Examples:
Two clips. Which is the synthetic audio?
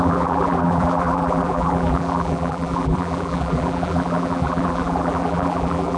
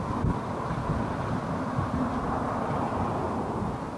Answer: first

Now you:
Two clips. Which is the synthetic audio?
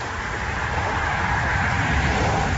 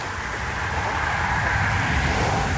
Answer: first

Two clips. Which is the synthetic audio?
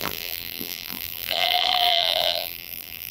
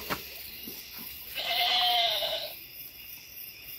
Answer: first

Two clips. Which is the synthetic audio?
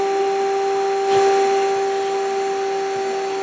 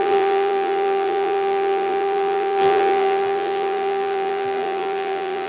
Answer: second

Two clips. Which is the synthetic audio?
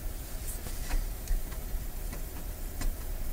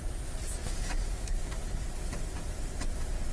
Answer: first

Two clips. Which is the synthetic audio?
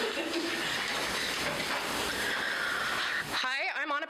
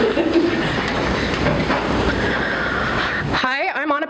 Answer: second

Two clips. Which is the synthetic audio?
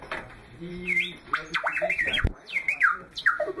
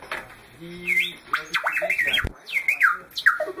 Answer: first